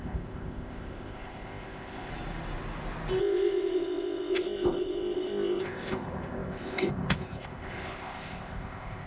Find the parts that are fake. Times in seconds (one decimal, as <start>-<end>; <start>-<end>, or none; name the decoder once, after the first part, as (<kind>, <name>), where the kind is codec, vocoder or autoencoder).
0.0-2.1 (codec, ZipCodec); 3.2-9.1